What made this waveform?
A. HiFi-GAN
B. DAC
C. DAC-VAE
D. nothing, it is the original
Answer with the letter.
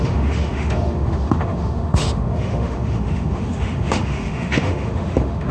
C